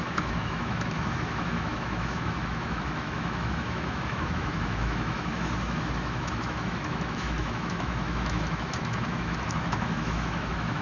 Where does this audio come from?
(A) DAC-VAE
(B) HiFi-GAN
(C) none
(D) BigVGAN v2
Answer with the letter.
A